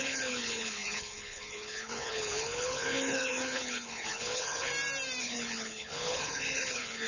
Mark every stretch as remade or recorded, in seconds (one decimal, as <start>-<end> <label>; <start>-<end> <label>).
0.0-4.7 remade; 4.7-5.2 recorded; 5.2-7.1 remade